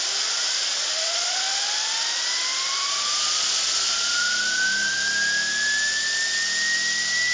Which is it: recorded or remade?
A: recorded